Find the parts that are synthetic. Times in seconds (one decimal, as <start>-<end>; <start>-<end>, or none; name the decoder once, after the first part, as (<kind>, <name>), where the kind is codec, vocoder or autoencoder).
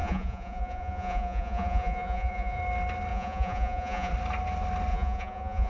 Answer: 0.0-2.6 (vocoder, Vocos); 3.1-4.1; 4.9-5.7